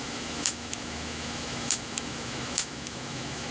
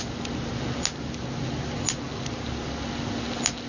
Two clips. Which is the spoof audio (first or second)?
first